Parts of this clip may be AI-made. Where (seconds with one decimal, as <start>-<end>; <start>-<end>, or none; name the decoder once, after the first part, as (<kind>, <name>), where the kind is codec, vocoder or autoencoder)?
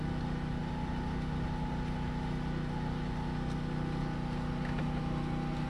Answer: none